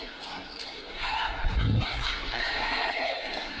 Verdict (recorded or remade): remade